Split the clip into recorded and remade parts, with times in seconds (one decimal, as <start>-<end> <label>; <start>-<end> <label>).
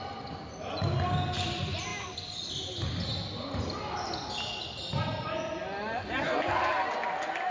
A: 0.0-7.5 recorded